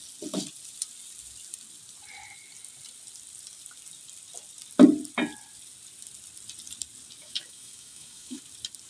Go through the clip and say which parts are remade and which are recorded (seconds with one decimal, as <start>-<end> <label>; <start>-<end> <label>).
0.0-7.2 recorded; 7.2-8.4 remade; 8.4-8.9 recorded